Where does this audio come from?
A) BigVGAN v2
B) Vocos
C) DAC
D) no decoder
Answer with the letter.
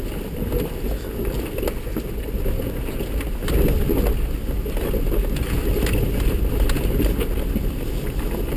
D